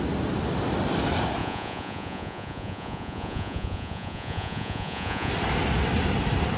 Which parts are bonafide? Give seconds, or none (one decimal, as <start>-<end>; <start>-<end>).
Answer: 0.0-1.4; 5.3-6.6